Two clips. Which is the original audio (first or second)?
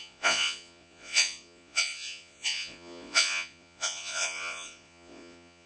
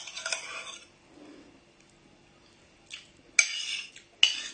second